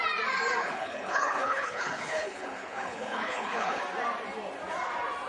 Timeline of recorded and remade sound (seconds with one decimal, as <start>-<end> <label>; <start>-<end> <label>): 0.0-0.6 recorded; 0.6-3.8 remade; 3.8-5.3 recorded

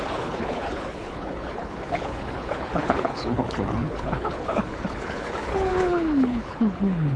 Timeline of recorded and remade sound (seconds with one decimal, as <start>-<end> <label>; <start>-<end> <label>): 0.0-7.2 remade

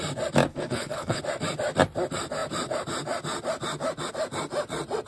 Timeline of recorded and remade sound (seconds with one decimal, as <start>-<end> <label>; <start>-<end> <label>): 0.0-0.5 recorded; 0.5-1.2 remade; 1.2-5.1 recorded

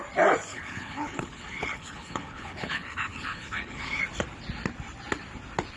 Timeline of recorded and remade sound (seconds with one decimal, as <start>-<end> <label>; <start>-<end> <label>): 0.0-0.5 recorded; 0.5-4.0 remade; 4.0-5.8 recorded

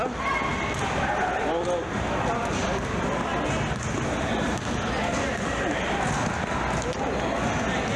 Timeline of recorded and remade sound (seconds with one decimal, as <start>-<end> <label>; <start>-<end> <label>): 0.0-8.0 recorded